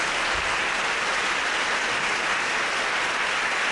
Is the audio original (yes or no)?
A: yes